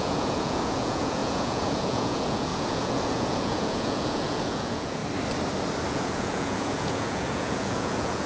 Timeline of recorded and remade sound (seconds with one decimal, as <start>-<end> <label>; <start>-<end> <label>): 0.0-5.0 remade; 5.0-5.9 recorded; 5.9-8.3 remade